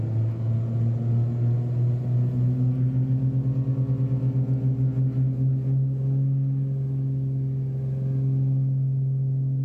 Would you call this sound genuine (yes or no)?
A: yes